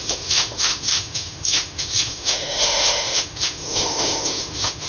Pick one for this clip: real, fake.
fake